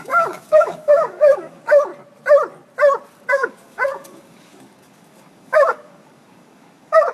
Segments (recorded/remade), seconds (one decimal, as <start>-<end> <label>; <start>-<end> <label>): 0.0-1.9 remade; 1.9-3.3 recorded; 3.3-7.1 remade